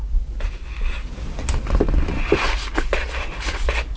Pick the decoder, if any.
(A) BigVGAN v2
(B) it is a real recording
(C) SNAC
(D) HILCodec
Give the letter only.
B